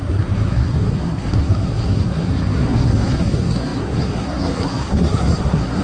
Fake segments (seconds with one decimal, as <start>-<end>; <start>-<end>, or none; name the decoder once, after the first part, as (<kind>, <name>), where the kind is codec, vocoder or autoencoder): 0.0-5.8 (codec, SNAC)